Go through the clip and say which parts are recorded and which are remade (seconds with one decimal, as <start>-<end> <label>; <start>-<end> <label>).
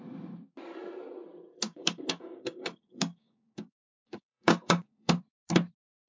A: 0.0-1.5 recorded; 1.5-5.2 remade; 5.2-6.1 recorded